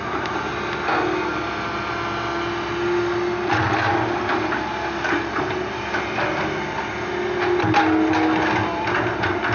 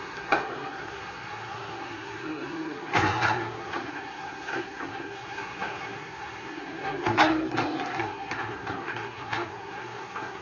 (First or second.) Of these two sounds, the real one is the first